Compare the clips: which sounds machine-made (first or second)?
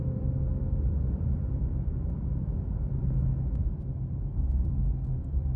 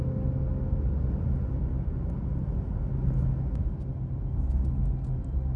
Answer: first